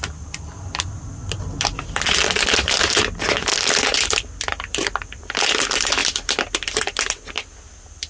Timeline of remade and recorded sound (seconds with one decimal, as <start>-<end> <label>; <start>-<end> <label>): 0.0-8.1 recorded